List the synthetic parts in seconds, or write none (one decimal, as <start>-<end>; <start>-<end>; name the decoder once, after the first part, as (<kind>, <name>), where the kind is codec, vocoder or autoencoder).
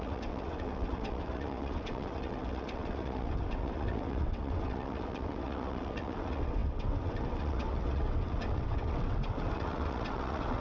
0.0-10.6 (vocoder, WaveNeXt)